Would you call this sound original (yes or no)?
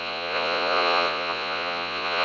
no